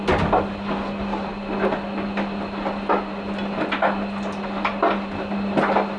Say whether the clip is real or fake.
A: real